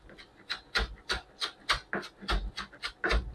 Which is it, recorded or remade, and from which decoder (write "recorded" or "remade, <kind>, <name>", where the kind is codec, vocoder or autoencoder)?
recorded